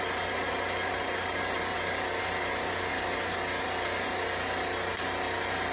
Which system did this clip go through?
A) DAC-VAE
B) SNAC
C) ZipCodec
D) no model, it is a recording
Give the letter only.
D